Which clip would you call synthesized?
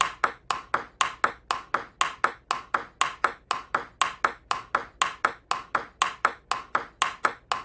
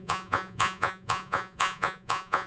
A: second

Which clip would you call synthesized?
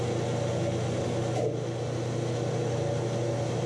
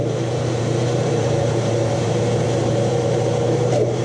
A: second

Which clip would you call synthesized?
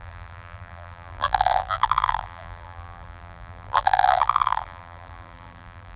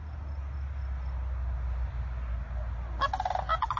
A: first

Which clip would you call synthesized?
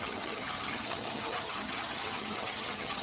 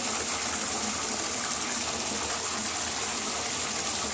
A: first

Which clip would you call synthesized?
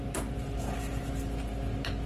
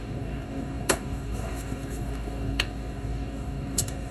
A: second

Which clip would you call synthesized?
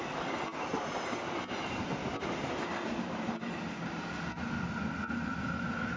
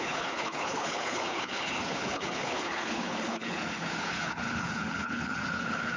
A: second